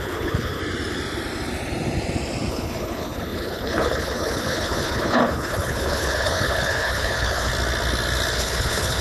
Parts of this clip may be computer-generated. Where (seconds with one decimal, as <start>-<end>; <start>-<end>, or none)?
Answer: 0.0-0.6; 2.5-7.5; 8.3-9.0